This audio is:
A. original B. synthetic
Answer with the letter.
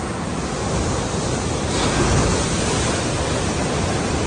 A